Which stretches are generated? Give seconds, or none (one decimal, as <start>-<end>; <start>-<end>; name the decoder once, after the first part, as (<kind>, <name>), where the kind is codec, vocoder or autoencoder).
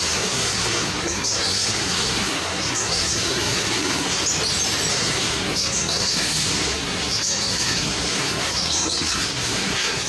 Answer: 0.0-4.2 (codec, SNAC); 4.9-10.1